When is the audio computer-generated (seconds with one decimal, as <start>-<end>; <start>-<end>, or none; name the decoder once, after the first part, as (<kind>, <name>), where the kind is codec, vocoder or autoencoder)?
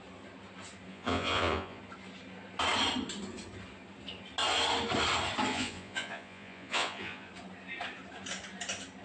0.9-1.8 (vocoder, Vocos); 5.5-7.3